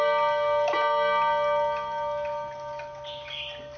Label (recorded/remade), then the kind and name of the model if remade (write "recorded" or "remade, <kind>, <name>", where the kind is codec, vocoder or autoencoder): recorded